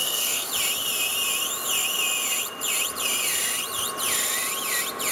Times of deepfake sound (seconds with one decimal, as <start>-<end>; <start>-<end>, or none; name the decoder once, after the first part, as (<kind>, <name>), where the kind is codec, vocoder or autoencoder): 0.0-0.5 (codec, SNAC)